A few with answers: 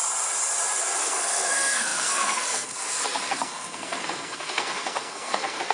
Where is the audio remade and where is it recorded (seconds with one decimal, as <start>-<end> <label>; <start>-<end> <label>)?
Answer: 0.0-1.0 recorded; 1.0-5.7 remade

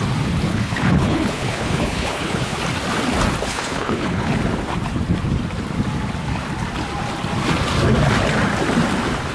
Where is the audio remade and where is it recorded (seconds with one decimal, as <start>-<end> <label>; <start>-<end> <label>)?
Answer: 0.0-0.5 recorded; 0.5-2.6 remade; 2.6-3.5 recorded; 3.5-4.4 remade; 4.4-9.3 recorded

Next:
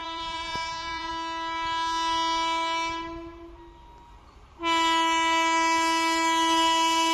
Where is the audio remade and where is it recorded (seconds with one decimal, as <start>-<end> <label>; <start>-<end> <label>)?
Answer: 0.0-1.1 remade; 1.1-7.1 recorded